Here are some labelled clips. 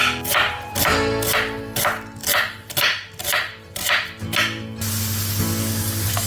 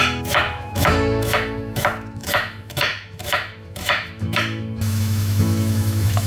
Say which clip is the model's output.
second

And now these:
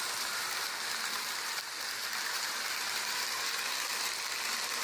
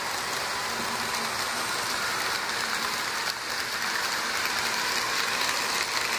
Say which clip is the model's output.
first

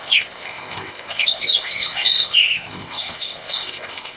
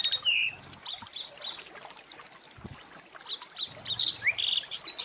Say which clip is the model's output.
first